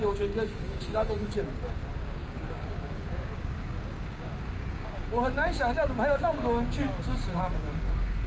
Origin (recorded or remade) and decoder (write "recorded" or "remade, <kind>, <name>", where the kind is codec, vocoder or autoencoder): remade, codec, DAC